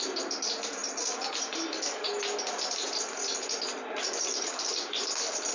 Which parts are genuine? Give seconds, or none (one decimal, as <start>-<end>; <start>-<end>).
none